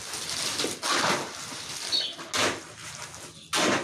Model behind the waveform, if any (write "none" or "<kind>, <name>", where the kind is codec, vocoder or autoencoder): none